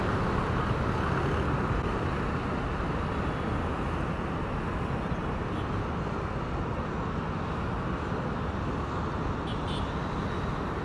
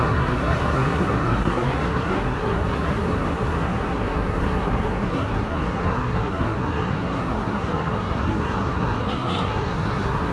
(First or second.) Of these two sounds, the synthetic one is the second